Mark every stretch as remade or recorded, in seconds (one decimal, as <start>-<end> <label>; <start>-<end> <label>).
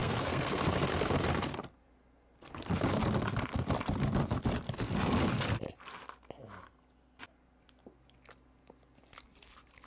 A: 0.0-0.6 remade; 0.6-9.9 recorded